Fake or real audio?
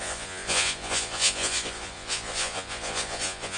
fake